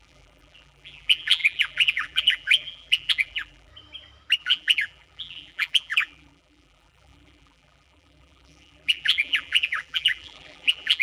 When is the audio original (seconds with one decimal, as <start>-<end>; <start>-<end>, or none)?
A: 3.7-4.4